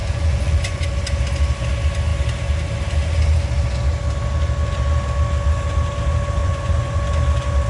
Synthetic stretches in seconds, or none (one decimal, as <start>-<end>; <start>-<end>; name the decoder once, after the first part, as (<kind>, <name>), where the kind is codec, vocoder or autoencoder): 0.0-0.8 (vocoder, Vocos); 6.4-7.0